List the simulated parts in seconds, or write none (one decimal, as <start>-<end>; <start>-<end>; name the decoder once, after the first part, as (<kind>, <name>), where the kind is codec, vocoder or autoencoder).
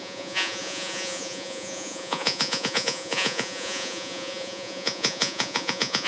0.0-6.1 (vocoder, Vocos)